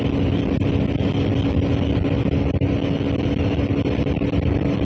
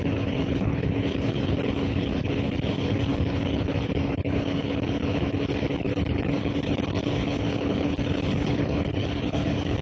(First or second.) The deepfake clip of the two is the second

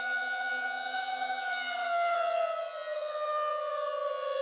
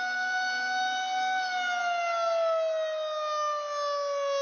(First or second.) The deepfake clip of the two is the first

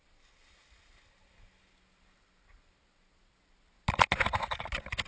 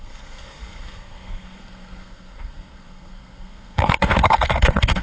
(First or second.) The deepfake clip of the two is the second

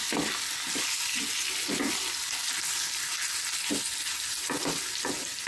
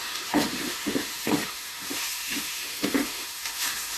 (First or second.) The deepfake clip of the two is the second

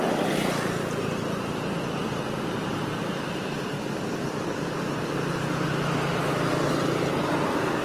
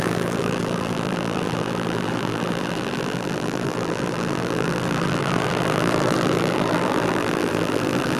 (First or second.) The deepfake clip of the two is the second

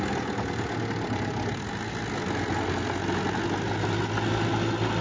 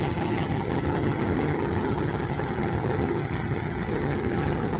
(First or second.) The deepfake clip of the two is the second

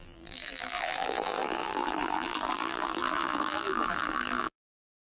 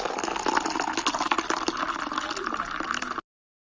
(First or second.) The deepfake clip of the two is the first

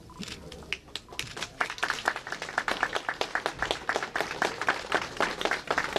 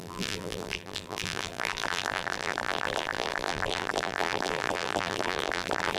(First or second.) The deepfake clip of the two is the second